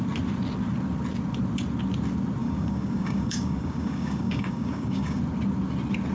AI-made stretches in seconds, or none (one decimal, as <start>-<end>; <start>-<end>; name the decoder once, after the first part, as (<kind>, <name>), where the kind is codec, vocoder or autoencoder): 2.4-5.2 (codec, DAC)